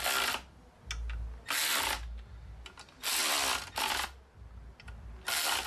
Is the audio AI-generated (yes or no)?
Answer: no